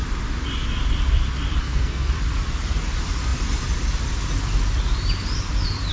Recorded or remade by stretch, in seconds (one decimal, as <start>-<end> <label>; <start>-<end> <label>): 0.0-1.6 recorded; 1.6-2.1 remade; 2.1-5.9 recorded